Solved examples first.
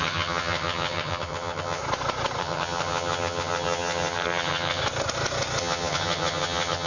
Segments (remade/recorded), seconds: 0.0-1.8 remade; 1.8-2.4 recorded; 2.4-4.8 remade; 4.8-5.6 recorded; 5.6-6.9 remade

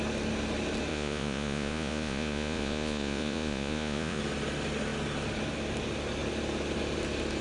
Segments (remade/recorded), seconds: 0.0-0.9 recorded; 0.9-4.2 remade; 4.2-7.4 recorded

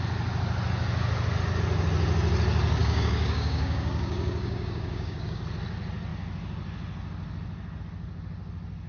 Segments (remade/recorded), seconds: 0.0-2.8 recorded; 2.8-5.4 remade; 5.4-8.9 recorded

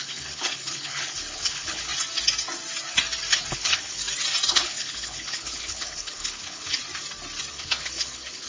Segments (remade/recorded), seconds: 0.0-1.9 remade; 1.9-3.5 recorded; 3.5-4.0 remade; 4.0-4.5 recorded; 4.5-6.8 remade; 6.8-7.5 recorded; 7.5-8.5 remade